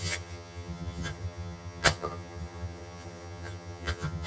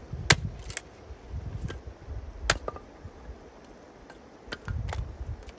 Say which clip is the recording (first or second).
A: second